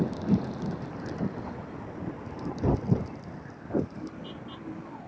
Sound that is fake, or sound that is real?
real